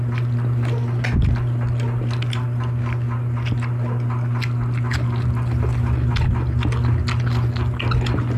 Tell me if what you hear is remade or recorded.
recorded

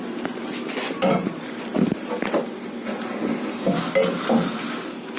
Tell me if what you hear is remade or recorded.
recorded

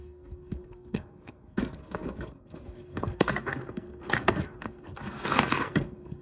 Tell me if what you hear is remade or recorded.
remade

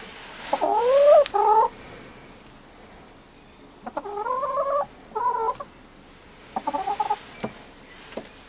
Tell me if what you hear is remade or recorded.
recorded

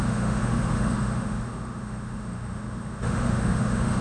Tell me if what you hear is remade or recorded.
remade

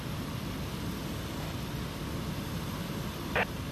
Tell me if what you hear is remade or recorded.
recorded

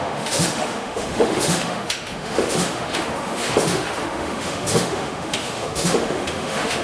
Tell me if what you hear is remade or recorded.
remade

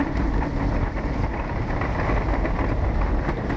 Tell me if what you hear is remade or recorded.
recorded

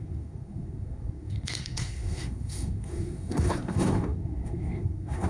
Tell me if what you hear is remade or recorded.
remade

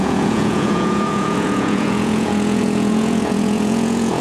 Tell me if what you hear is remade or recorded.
remade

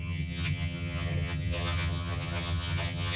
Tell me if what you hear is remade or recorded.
remade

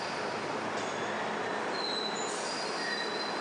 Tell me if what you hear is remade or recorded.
recorded